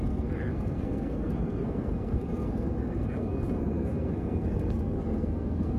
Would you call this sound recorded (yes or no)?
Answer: no